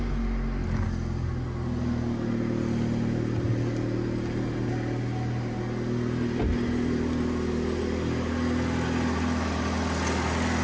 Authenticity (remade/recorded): recorded